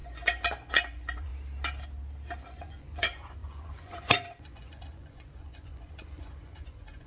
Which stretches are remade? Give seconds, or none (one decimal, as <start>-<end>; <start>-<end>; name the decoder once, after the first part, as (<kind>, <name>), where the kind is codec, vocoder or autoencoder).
0.0-1.3 (vocoder, Vocos); 2.4-7.1